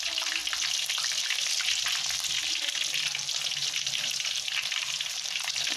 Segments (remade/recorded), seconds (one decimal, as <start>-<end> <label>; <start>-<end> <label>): 0.0-3.6 recorded; 3.6-5.8 remade